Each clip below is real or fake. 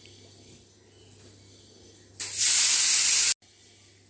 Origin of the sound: real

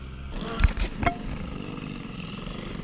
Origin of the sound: real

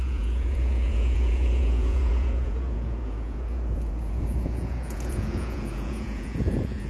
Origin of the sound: fake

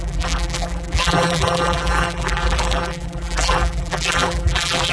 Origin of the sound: fake